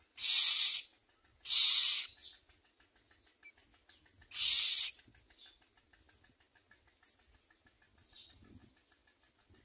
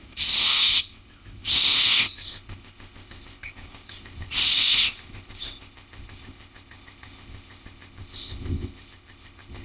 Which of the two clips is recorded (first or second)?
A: first